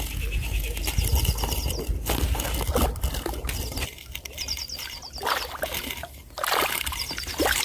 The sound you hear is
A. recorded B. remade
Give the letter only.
A